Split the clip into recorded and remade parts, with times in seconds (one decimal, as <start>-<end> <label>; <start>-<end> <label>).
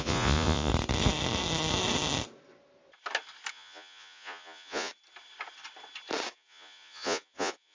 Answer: 0.0-0.7 remade; 0.7-3.5 recorded; 3.5-4.9 remade; 4.9-6.3 recorded; 6.3-7.7 remade